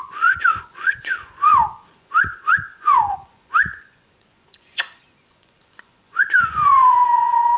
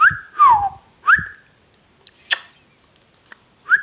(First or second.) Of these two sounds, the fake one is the first